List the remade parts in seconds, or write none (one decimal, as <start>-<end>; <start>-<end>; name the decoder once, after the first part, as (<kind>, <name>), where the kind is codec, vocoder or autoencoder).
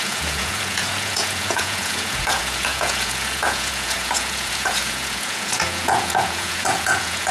0.0-7.3 (vocoder, Vocos)